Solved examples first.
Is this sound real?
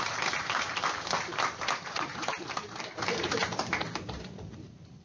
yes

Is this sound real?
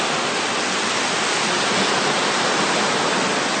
yes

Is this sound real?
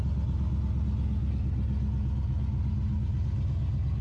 yes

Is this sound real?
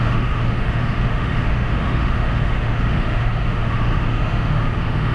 no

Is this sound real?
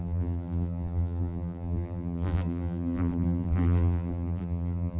no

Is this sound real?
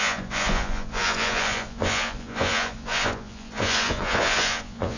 no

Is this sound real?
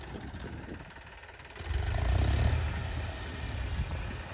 yes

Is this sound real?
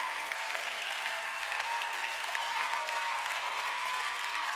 no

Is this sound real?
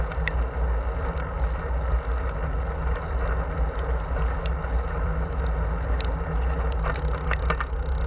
yes